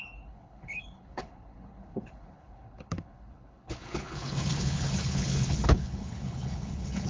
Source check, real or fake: fake